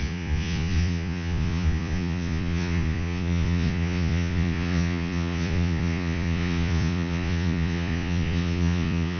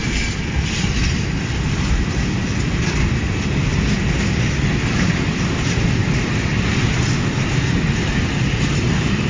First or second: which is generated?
first